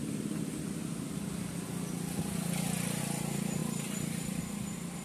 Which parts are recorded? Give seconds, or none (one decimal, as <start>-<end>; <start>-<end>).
0.0-3.6; 4.4-5.0